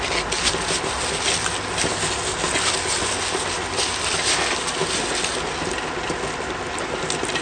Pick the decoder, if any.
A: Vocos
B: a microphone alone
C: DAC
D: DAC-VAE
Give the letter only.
B